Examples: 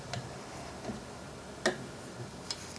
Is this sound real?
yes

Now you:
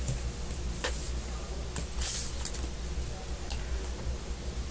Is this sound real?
yes